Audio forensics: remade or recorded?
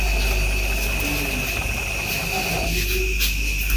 recorded